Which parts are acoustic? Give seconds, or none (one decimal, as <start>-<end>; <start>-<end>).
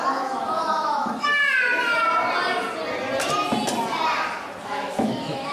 1.3-4.6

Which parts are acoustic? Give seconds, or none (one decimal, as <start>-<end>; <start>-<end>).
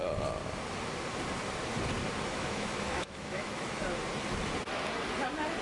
0.0-2.3; 3.8-5.6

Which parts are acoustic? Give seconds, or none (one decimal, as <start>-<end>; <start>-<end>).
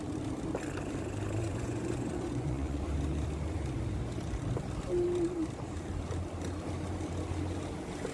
0.0-1.4; 2.9-8.1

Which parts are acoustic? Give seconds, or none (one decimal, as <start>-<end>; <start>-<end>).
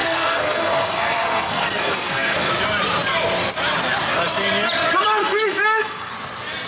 2.5-5.2; 6.1-6.7